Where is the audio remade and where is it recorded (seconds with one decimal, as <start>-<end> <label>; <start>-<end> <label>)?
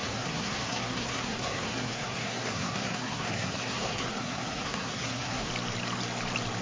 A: 0.0-5.5 remade; 5.5-6.6 recorded